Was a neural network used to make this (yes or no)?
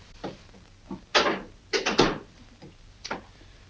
no